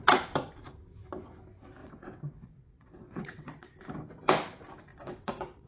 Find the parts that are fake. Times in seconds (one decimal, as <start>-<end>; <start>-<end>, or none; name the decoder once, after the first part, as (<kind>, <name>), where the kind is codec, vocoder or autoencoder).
1.8-3.7 (vocoder, WaveNeXt); 4.9-5.7